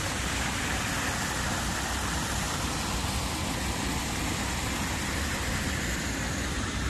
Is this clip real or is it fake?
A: real